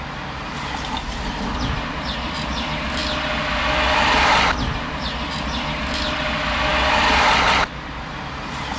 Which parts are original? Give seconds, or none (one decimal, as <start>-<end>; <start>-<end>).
3.0-4.9; 6.7-8.8